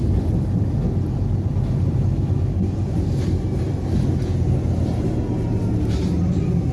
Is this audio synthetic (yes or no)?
no